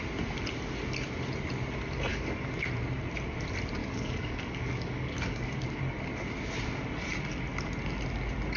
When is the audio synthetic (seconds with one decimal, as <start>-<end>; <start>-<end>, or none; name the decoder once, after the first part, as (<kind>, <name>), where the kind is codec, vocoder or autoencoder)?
2.1-2.7 (codec, DAC); 3.8-5.8